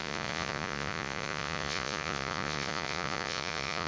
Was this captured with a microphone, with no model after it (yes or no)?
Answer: no